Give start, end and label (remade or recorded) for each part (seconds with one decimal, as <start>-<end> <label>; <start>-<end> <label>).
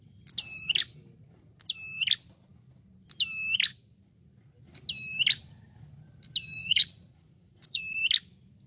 0.0-6.6 recorded; 6.6-7.8 remade; 7.8-8.7 recorded